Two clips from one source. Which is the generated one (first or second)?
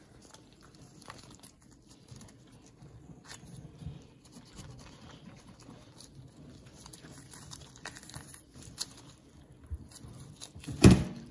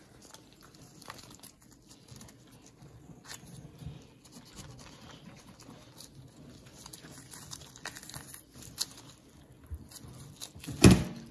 first